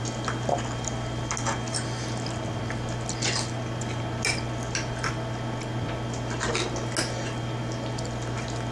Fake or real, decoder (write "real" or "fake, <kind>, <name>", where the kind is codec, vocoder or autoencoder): real